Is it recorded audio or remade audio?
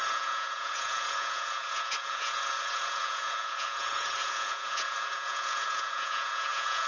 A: remade